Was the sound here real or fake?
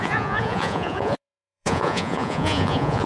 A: fake